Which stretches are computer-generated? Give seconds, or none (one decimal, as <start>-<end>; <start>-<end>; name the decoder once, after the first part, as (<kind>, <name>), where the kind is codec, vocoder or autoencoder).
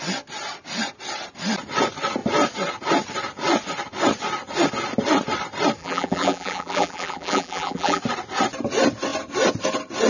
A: 5.8-8.0 (vocoder, BigVGAN v2)